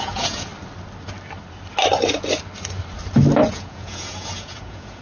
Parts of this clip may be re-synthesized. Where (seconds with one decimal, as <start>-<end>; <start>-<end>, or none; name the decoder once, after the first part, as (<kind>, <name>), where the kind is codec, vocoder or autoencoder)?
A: 0.0-0.5 (vocoder, Vocos); 3.5-5.0